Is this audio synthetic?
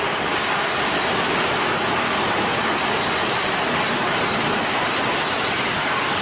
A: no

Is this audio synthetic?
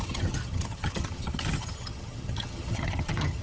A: yes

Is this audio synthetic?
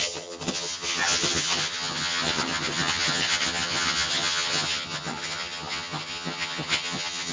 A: yes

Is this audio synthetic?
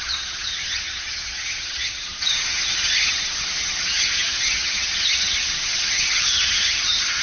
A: yes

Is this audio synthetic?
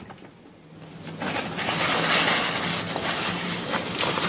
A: no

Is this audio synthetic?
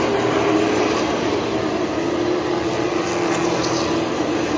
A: no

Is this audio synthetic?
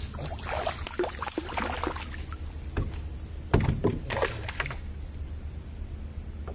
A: no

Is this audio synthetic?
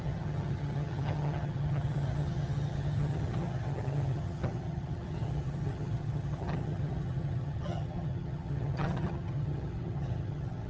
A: yes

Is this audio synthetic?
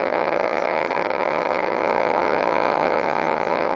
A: yes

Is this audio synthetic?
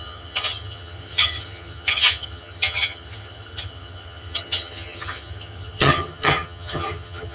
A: yes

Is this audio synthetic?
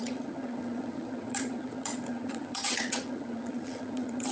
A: yes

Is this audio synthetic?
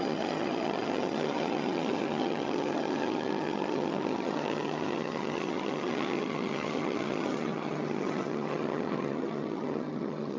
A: yes